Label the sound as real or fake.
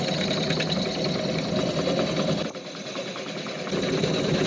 real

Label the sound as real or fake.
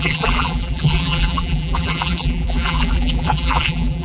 fake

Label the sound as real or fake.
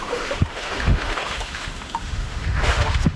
fake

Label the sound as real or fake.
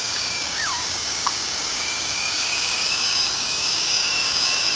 fake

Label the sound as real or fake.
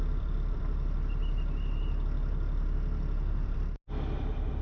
fake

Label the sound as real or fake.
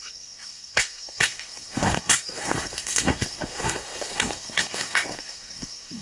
fake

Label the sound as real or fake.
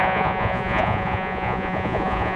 fake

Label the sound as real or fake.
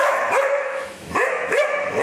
fake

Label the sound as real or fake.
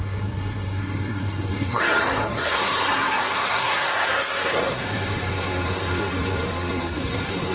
fake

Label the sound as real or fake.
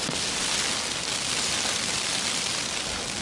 real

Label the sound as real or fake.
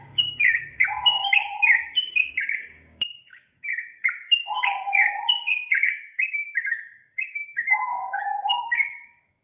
fake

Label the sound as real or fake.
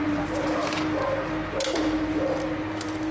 real